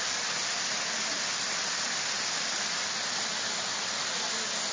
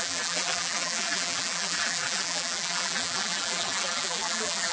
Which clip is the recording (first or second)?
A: first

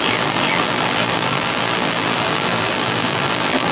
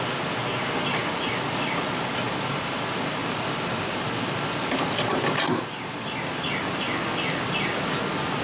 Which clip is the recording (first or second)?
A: second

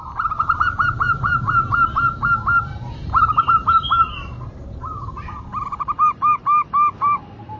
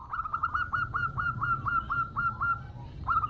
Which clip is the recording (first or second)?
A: second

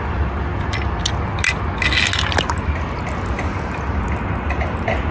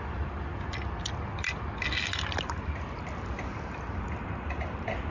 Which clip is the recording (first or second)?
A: first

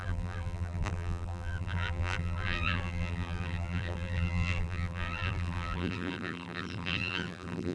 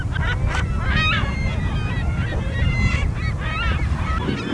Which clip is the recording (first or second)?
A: second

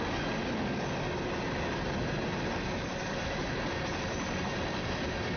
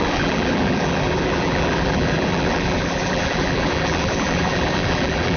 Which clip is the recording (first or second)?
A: first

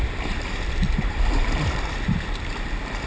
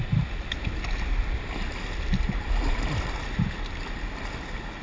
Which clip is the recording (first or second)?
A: second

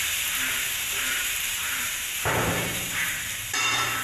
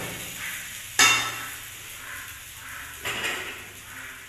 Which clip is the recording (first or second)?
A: second